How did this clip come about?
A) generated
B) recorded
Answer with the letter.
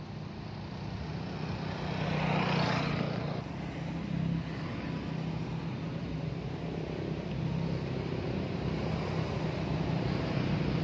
B